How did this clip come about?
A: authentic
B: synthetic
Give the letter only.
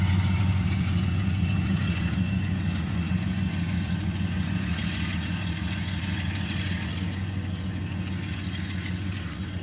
B